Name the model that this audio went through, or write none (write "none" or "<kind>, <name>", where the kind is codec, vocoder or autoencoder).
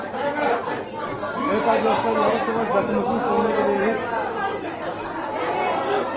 none